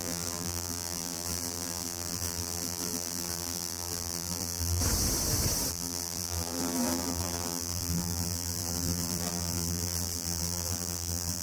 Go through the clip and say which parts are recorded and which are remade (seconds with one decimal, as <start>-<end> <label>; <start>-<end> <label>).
0.0-4.8 remade; 4.8-5.7 recorded; 5.7-11.4 remade